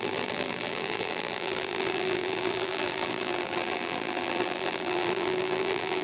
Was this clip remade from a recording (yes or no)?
yes